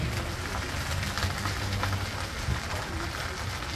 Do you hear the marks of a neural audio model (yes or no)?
no